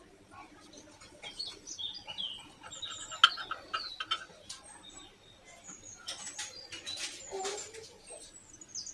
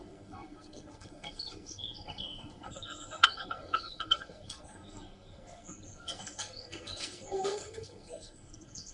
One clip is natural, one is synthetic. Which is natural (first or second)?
first